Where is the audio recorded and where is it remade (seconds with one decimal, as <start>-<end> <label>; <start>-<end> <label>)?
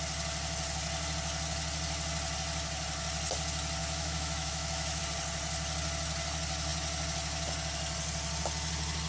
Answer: 0.0-3.8 recorded; 3.8-5.0 remade; 5.0-9.1 recorded